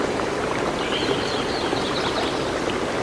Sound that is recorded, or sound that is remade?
recorded